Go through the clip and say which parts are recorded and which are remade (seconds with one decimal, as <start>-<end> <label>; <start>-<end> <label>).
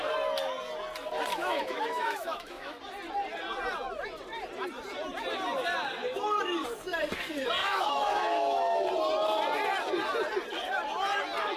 0.0-1.3 recorded; 1.3-2.8 remade; 2.8-7.6 recorded; 7.6-8.9 remade; 8.9-11.6 recorded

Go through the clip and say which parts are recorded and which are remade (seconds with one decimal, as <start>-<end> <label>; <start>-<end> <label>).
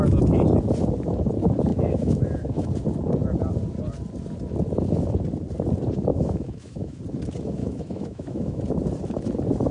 0.0-1.7 recorded; 1.7-2.7 remade; 2.7-6.1 recorded; 6.1-7.0 remade; 7.0-7.6 recorded; 7.6-8.6 remade; 8.6-9.7 recorded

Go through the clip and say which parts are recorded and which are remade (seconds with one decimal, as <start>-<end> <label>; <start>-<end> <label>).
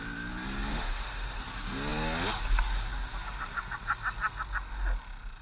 0.0-0.7 recorded; 0.7-1.4 remade; 1.4-5.4 recorded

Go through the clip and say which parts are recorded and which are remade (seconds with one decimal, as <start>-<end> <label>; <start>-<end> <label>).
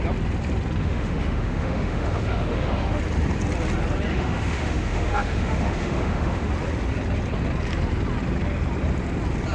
0.0-0.8 recorded; 0.8-3.0 remade; 3.0-4.1 recorded; 4.1-6.5 remade; 6.5-9.5 recorded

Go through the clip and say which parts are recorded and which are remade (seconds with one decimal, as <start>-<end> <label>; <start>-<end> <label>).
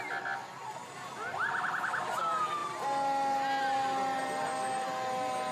0.0-5.5 recorded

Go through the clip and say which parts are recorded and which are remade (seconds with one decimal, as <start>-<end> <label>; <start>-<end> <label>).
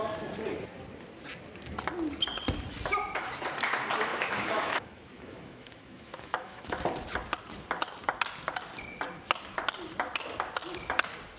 0.0-4.1 recorded; 4.1-6.8 remade; 6.8-11.4 recorded